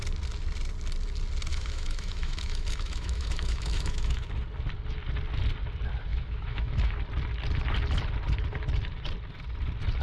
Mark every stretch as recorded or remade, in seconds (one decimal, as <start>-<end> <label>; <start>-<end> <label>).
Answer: 0.0-1.5 recorded; 1.5-4.3 remade; 4.3-6.1 recorded; 6.1-7.0 remade; 7.0-10.0 recorded